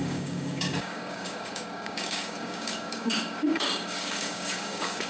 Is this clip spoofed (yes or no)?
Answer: yes